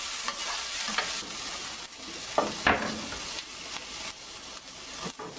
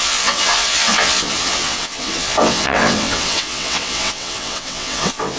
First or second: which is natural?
first